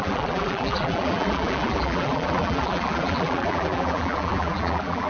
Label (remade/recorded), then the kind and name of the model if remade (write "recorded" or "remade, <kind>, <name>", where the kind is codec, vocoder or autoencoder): remade, vocoder, BigVGAN v2